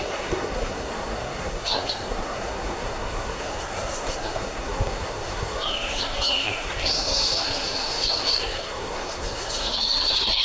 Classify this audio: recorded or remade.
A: remade